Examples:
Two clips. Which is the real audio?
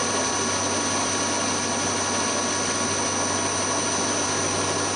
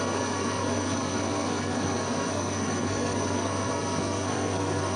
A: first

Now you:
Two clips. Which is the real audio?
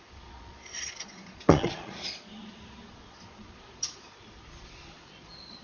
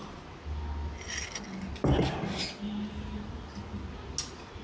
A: second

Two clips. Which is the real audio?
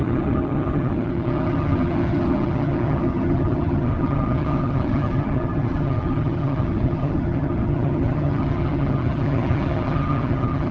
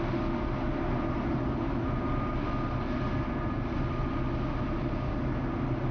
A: second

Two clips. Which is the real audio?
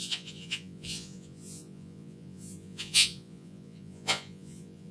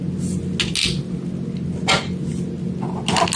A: second